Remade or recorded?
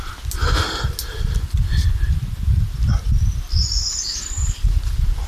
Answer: recorded